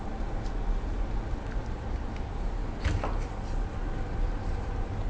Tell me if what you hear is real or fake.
real